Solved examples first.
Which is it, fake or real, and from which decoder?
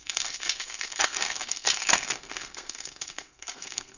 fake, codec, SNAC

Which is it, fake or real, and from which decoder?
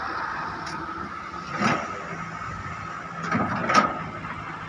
real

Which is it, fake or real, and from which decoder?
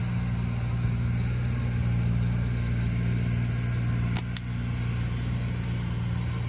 real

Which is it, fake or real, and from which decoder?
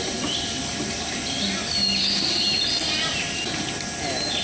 real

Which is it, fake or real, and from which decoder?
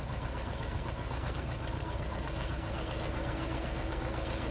fake, codec, SNAC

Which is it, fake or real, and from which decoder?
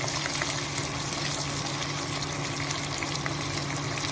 real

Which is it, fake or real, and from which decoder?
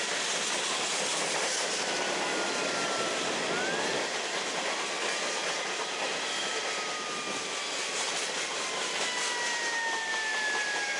real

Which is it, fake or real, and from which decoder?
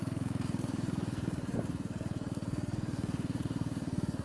fake, codec, SNAC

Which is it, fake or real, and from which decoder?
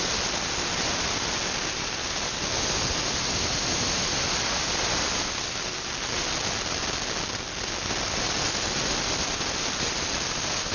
real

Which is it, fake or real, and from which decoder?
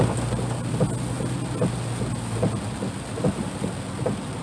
real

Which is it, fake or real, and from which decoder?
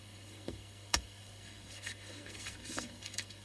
fake, codec, SNAC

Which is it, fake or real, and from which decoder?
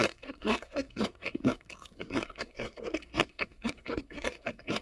fake, codec, SNAC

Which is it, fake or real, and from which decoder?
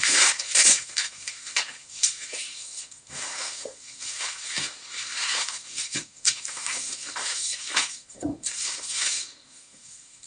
fake, codec, SNAC